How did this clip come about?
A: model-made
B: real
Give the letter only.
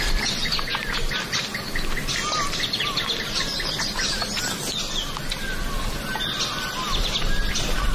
B